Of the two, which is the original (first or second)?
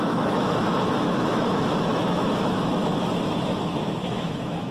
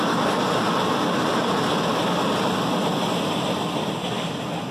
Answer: second